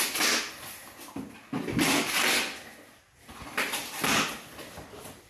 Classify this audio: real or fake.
real